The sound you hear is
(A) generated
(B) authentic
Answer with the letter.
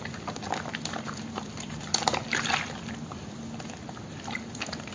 B